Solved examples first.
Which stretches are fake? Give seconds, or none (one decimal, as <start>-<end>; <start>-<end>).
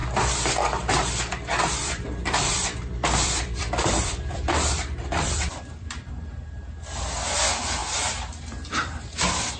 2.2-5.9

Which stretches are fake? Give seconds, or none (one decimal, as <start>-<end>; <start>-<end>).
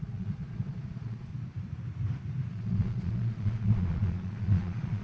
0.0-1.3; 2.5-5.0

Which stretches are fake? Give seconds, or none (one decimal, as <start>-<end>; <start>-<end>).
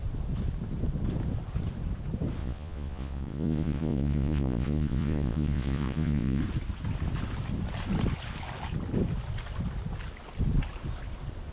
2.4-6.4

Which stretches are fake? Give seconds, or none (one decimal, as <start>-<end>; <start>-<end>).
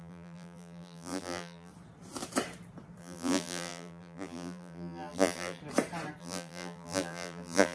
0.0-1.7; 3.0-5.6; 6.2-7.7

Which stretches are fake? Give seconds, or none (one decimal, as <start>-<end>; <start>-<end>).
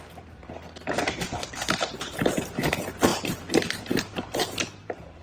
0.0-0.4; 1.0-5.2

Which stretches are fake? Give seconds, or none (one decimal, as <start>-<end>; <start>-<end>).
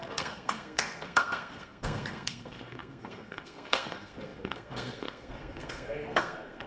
0.0-6.7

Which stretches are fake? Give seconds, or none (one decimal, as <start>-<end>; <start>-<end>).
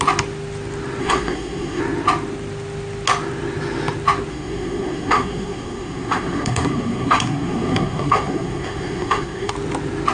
1.0-1.8; 4.3-9.5